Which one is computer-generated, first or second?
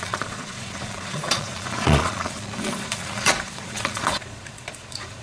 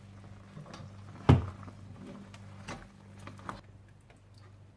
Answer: first